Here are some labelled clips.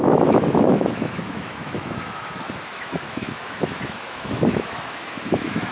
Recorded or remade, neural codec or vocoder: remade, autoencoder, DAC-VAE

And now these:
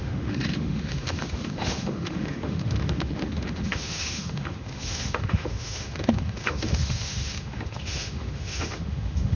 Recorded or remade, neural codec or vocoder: remade, autoencoder, DAC-VAE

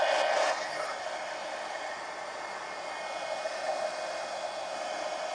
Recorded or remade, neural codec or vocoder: recorded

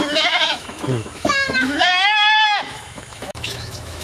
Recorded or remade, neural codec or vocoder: remade, autoencoder, DAC-VAE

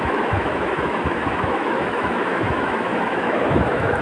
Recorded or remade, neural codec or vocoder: remade, autoencoder, DAC-VAE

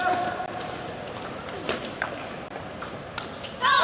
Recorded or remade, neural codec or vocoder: recorded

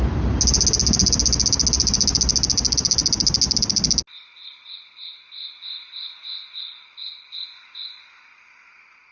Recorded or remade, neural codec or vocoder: recorded